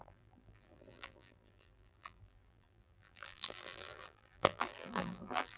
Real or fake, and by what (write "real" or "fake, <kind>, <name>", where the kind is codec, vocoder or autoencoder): fake, vocoder, BigVGAN v2